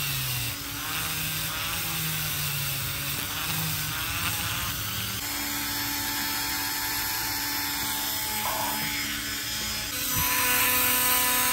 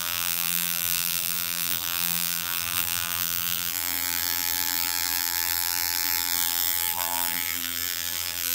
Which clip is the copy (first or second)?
second